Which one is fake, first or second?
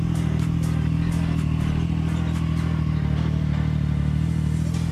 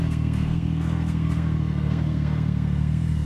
second